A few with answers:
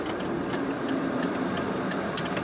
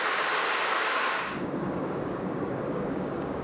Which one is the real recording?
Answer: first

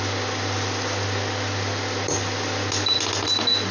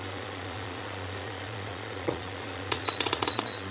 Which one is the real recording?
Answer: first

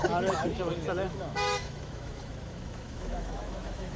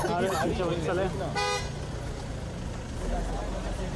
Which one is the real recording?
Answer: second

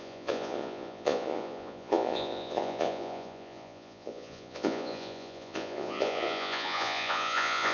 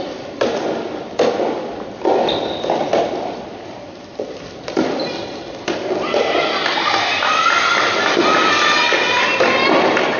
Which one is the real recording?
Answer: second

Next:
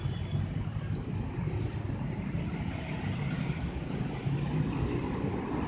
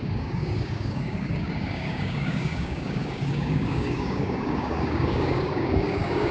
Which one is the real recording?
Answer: first